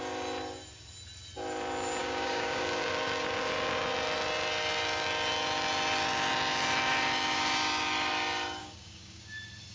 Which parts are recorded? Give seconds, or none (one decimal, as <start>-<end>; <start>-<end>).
0.0-2.0; 2.6-8.6; 9.2-9.7